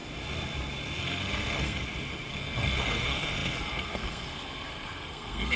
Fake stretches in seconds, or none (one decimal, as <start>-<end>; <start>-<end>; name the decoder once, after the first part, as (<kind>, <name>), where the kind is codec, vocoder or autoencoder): 1.0-1.8 (codec, SNAC); 2.3-5.6